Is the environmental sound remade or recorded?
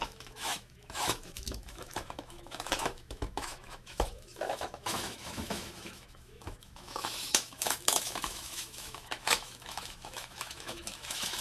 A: remade